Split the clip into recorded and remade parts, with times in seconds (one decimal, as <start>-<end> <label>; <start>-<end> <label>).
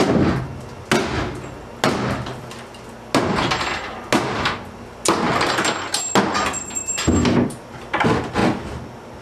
0.0-9.2 recorded